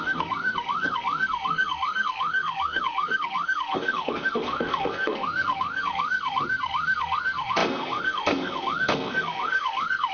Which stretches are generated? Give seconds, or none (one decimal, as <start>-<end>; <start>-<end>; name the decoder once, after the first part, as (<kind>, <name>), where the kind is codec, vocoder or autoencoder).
0.0-10.1 (codec, SNAC)

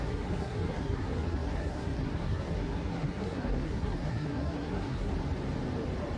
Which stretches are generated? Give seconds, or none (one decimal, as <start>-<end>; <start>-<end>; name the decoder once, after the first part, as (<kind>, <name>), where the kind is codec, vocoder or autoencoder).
0.0-5.1 (codec, SNAC)

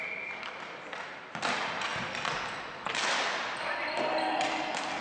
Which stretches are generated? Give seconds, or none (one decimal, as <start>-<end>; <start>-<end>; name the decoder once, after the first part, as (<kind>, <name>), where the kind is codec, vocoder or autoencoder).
none

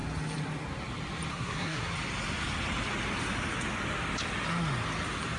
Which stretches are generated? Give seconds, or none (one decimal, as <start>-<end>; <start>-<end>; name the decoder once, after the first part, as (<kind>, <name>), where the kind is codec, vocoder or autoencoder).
1.3-1.9 (codec, SNAC)